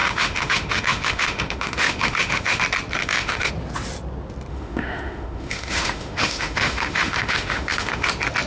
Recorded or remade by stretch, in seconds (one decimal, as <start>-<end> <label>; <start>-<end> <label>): 0.0-2.6 remade; 2.6-3.0 recorded; 3.0-3.5 remade; 3.5-4.5 recorded; 4.5-8.1 remade; 8.1-8.5 recorded